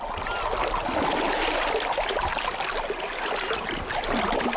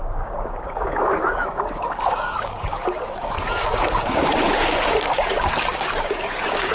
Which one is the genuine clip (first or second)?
first